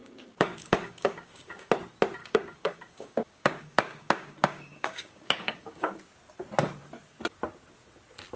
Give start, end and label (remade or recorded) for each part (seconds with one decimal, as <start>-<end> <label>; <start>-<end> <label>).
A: 0.0-1.7 remade; 1.7-2.2 recorded; 2.2-6.0 remade; 6.0-8.4 recorded